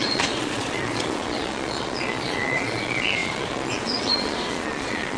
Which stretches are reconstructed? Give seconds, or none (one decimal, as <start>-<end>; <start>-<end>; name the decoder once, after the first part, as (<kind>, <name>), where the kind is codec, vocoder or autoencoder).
0.0-5.2 (vocoder, Vocos)